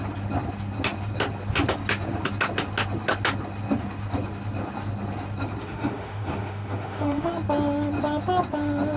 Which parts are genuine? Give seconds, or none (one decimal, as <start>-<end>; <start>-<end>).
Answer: 0.0-5.6; 7.3-9.0